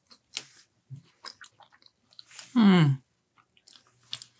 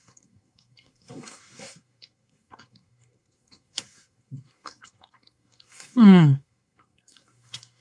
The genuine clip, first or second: first